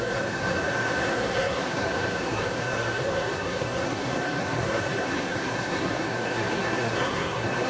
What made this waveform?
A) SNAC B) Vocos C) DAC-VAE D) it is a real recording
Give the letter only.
A